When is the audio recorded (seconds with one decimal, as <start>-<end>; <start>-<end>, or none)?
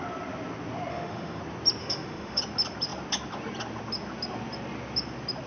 0.0-0.9; 1.4-1.8; 2.4-5.5